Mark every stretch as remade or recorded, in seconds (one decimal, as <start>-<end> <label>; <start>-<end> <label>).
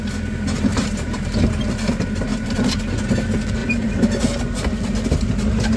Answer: 0.0-0.7 recorded; 0.7-1.7 remade; 1.7-2.3 recorded; 2.3-2.8 remade; 2.8-3.6 recorded; 3.6-4.2 remade; 4.2-5.8 recorded